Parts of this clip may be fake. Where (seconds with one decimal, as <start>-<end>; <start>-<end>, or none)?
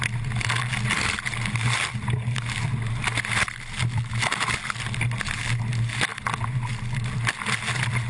none